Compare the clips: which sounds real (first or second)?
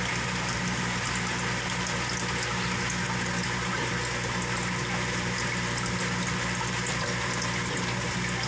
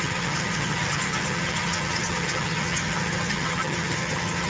first